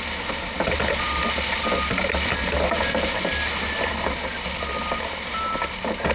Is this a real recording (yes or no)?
yes